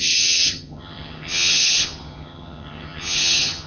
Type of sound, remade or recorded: remade